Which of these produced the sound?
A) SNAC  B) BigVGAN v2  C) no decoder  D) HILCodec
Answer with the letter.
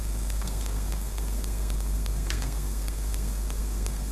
A